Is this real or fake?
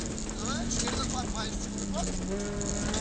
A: real